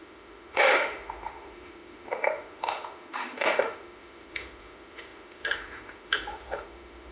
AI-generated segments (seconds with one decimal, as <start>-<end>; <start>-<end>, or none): 0.0-7.1